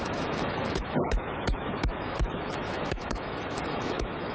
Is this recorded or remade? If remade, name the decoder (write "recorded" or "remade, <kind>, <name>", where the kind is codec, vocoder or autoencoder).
remade, autoencoder, DAC-VAE